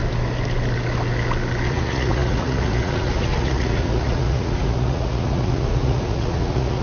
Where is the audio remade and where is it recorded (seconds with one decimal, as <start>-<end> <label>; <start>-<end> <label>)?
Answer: 0.0-1.7 recorded; 1.7-6.8 remade